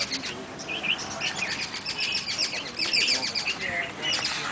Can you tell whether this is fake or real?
real